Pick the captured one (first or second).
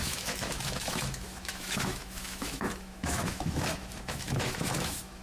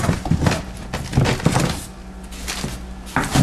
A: second